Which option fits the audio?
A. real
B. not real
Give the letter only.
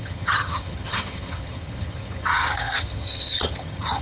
B